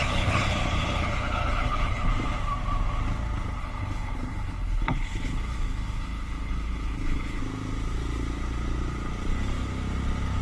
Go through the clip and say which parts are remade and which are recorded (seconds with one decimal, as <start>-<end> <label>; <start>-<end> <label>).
0.0-2.1 remade; 2.1-3.6 recorded; 3.6-7.4 remade; 7.4-10.4 recorded